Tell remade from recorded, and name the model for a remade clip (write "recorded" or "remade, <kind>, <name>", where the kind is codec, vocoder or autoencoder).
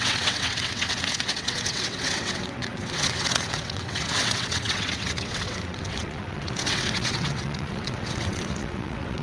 remade, vocoder, WaveNeXt